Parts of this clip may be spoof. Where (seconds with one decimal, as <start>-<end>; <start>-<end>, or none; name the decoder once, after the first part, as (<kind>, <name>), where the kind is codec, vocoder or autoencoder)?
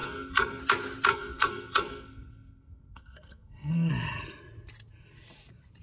0.0-0.6 (codec, SNAC); 1.1-3.9